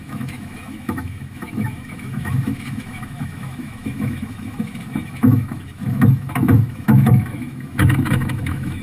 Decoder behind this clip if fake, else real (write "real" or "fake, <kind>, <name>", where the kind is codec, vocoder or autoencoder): fake, autoencoder, DAC-VAE